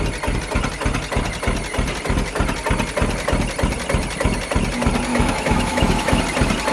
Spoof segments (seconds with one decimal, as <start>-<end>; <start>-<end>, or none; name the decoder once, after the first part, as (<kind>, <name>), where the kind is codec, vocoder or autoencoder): 5.1-6.2 (autoencoder, DAC-VAE)